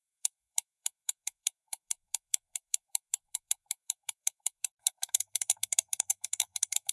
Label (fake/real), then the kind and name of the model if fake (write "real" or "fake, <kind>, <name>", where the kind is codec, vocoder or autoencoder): fake, codec, SNAC